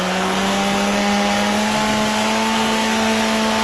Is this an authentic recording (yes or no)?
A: no